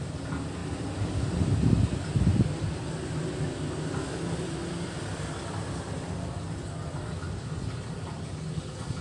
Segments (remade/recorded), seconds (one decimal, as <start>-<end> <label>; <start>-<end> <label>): 0.0-9.0 recorded